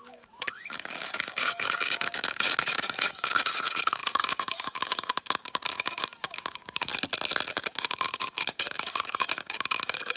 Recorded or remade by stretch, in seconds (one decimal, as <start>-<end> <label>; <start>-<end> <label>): 0.0-6.9 remade; 6.9-7.5 recorded; 7.5-10.2 remade